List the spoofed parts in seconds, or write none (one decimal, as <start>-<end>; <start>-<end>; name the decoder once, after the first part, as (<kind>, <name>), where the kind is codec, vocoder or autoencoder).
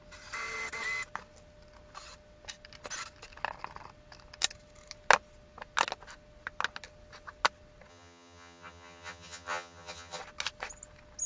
7.9-10.2 (vocoder, HiFi-GAN)